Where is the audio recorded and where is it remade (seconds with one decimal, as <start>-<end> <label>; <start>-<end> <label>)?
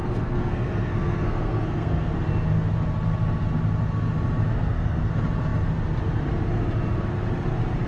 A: 0.0-2.1 remade; 2.1-4.5 recorded; 4.5-5.1 remade; 5.1-7.9 recorded